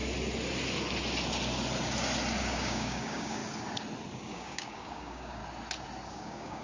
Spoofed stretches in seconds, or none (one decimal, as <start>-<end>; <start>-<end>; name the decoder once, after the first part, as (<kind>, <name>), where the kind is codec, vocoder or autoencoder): 2.4-3.4 (codec, DAC); 4.1-5.4; 6.1-6.6